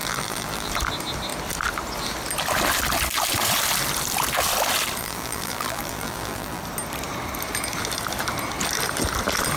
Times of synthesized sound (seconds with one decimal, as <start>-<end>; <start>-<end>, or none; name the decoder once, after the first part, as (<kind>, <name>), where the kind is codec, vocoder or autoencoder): 0.0-0.7 (vocoder, BigVGAN v2); 5.0-6.6